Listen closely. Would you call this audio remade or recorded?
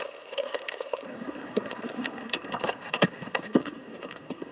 remade